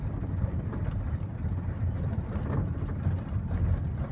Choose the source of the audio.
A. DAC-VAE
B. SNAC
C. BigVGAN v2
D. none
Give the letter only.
D